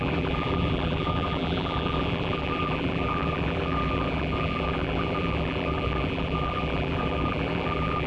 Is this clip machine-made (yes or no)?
yes